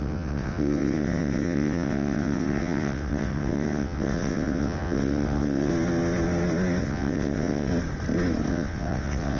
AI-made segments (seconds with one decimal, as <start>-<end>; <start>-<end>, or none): 0.0-5.7; 6.8-7.7; 8.5-9.4